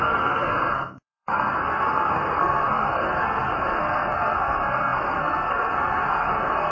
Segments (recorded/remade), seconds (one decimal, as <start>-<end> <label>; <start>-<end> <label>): 0.0-6.7 remade

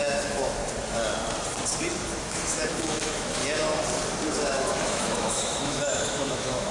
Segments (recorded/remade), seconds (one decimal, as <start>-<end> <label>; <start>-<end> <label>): 0.0-0.6 remade; 0.6-2.2 recorded; 2.2-3.4 remade; 3.4-4.3 recorded; 4.3-6.7 remade

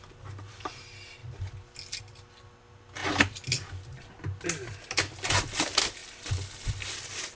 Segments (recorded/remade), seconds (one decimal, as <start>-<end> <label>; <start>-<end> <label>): 0.0-7.4 recorded

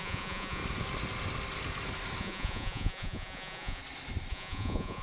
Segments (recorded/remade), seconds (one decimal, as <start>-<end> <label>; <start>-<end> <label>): 0.0-0.6 remade; 0.6-2.2 recorded; 2.2-3.8 remade; 3.8-4.3 recorded; 4.3-5.0 remade

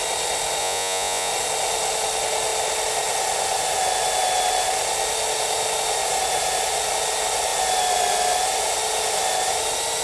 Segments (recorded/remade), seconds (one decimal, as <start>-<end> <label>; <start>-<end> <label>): 0.0-0.6 recorded; 0.6-1.3 remade; 1.3-10.0 recorded

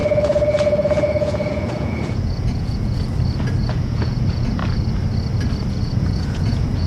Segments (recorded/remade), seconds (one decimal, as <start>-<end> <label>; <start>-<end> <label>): 0.0-3.1 remade; 3.1-3.6 recorded; 3.6-4.6 remade; 4.6-5.7 recorded; 5.7-6.9 remade

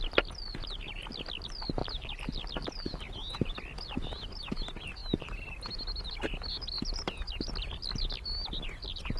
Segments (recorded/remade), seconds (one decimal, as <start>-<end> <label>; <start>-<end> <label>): 0.0-1.8 recorded; 1.8-3.0 remade; 3.0-9.2 recorded

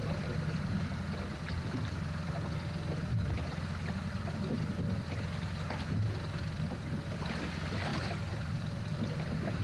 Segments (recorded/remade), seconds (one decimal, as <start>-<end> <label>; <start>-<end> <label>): 0.0-9.6 recorded